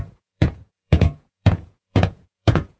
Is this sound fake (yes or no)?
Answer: yes